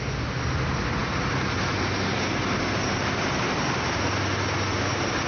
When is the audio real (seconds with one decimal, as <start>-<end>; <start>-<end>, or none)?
0.0-5.3